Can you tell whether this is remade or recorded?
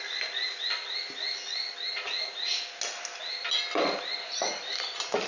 recorded